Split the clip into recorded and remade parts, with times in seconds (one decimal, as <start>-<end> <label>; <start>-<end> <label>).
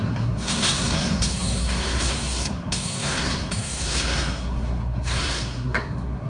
0.0-6.3 remade